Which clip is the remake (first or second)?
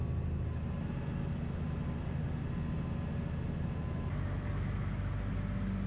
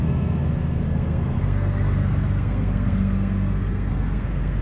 second